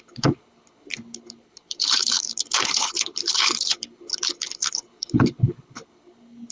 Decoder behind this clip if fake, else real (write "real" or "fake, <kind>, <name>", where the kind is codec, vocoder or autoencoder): fake, codec, HILCodec